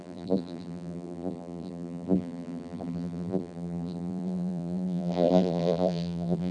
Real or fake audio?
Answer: fake